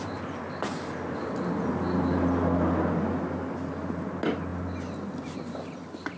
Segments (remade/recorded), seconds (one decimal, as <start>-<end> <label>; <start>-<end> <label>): 0.0-6.2 recorded